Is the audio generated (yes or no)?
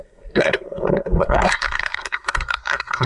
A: yes